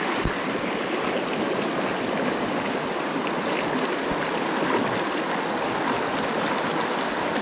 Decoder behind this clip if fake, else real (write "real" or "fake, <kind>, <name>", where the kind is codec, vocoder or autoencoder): real